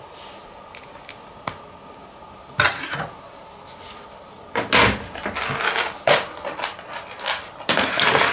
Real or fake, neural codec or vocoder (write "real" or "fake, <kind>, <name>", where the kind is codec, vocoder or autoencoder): real